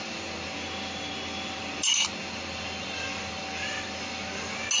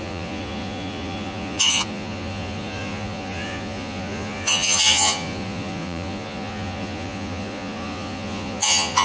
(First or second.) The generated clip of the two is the second